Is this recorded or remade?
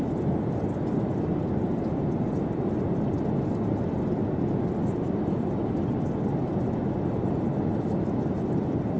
recorded